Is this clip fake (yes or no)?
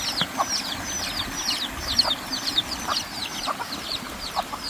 no